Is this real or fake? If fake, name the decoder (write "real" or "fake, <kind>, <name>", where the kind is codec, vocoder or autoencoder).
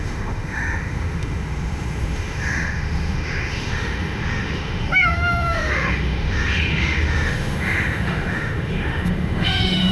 fake, autoencoder, DAC-VAE